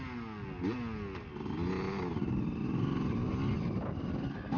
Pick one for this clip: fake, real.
real